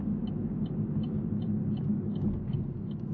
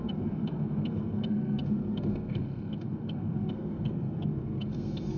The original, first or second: first